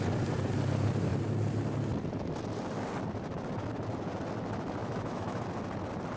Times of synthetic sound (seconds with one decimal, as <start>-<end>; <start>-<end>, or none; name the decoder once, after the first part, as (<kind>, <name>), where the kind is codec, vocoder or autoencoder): 4.8-5.4 (autoencoder, DAC-VAE)